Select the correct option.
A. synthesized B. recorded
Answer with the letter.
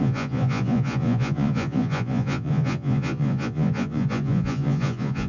A